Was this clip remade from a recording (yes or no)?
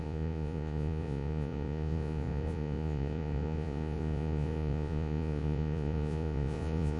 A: yes